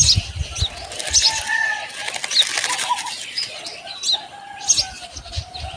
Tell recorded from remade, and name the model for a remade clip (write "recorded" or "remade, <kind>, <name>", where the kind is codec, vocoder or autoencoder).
recorded